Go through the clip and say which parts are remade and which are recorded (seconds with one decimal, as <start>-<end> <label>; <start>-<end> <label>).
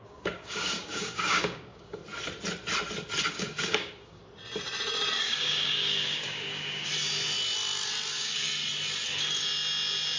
0.0-2.0 remade; 2.0-3.3 recorded; 3.3-4.2 remade; 4.2-5.2 recorded; 5.2-6.9 remade; 6.9-8.1 recorded; 8.1-8.5 remade; 8.5-10.2 recorded